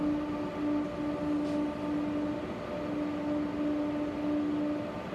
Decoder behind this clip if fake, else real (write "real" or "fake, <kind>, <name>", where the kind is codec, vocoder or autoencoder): real